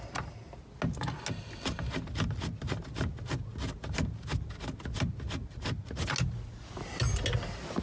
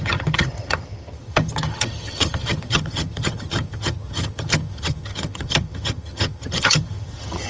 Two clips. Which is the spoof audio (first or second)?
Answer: second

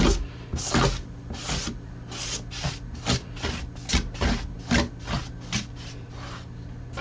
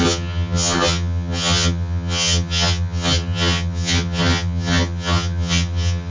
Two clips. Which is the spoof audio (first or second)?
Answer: second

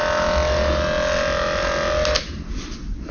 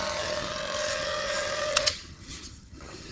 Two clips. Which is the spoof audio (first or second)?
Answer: second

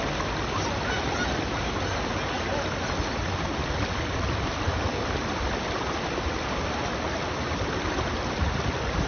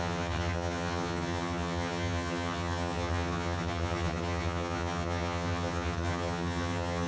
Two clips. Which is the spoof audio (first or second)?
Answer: second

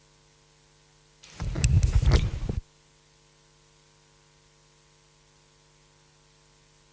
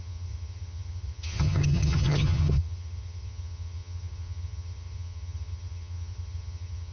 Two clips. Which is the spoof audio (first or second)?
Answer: second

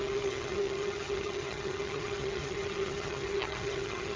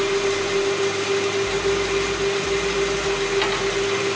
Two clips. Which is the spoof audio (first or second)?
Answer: first